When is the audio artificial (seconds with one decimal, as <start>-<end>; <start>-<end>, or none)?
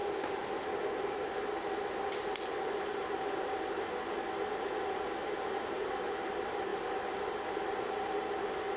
none